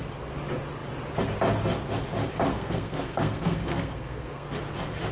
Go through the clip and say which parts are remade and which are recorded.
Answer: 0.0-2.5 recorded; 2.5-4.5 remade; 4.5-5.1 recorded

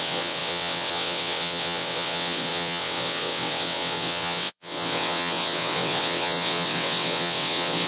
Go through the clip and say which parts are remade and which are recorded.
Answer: 0.0-7.9 remade

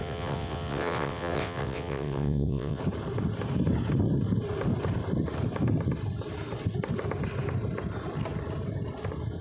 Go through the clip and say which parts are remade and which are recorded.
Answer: 0.0-2.8 remade; 2.8-9.4 recorded

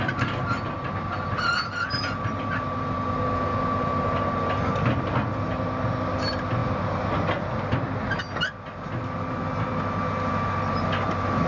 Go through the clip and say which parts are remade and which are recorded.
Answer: 0.0-11.5 recorded